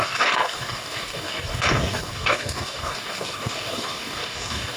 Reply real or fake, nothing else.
fake